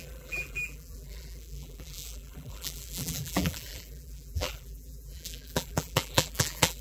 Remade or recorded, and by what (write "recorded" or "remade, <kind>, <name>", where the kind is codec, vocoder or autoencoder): remade, vocoder, BigVGAN v2